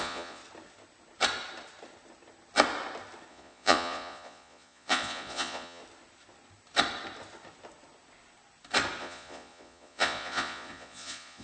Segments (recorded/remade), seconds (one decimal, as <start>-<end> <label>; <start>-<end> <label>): 0.0-0.4 remade; 0.4-3.3 recorded; 3.3-5.8 remade; 5.8-9.0 recorded; 9.0-11.4 remade